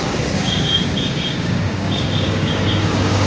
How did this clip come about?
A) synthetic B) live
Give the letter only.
A